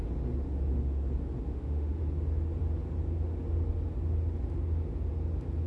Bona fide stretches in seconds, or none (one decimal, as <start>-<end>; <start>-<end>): 0.0-1.5; 2.0-5.7